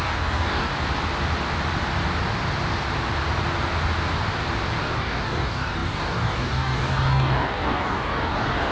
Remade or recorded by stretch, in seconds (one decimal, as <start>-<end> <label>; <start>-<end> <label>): 0.0-0.7 remade; 0.7-4.8 recorded; 4.8-8.7 remade

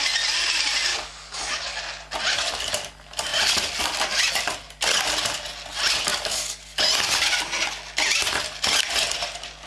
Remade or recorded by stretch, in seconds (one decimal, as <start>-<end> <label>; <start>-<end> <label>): 0.0-0.9 recorded; 0.9-1.8 remade; 1.8-6.1 recorded; 6.1-6.8 remade; 6.8-9.7 recorded

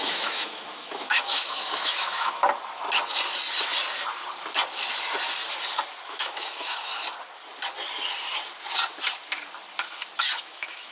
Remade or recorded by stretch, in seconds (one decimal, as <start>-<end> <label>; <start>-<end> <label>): 0.0-2.4 remade; 2.4-6.0 recorded; 6.0-6.9 remade; 6.9-10.4 recorded; 10.4-10.9 remade

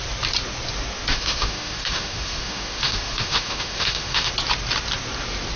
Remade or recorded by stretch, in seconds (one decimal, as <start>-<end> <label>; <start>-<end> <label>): 0.0-1.1 recorded; 1.1-4.3 remade; 4.3-5.6 recorded

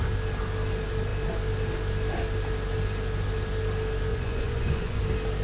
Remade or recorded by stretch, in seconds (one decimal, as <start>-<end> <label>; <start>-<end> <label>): 0.0-4.1 recorded; 4.1-5.0 remade; 5.0-5.4 recorded

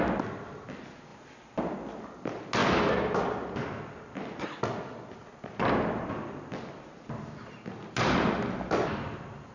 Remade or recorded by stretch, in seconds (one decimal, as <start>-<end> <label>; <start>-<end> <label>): 0.0-9.5 recorded